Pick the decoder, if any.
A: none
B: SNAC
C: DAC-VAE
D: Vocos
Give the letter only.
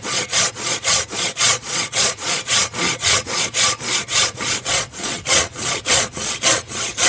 D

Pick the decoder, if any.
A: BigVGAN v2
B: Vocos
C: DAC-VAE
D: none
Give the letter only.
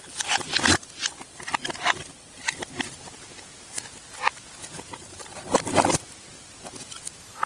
D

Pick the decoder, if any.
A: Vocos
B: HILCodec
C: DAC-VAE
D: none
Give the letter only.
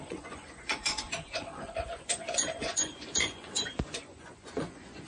A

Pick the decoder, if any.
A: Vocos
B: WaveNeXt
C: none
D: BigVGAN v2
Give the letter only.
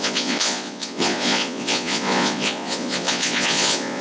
A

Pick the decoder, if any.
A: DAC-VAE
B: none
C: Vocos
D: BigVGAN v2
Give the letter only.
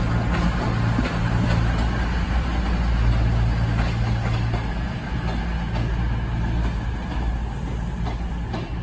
B